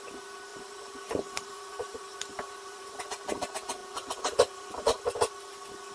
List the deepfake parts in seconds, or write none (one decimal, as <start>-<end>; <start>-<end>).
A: 0.5-3.0; 3.8-5.3